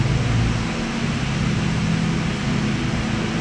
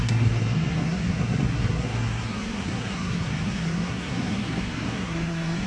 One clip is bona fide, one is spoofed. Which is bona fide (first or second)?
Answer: first